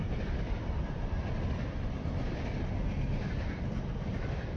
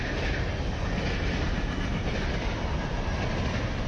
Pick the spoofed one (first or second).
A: first